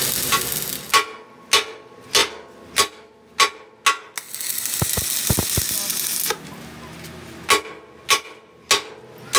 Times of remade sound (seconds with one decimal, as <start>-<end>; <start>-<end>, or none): none